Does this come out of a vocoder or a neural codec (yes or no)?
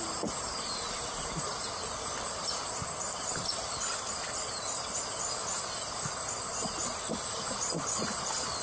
no